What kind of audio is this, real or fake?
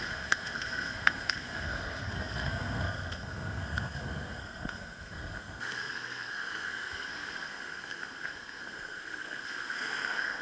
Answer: fake